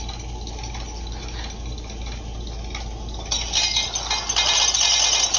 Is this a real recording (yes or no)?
yes